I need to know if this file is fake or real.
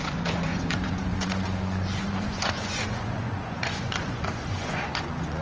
fake